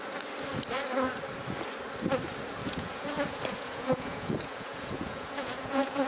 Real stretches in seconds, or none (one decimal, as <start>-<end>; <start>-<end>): 0.0-2.6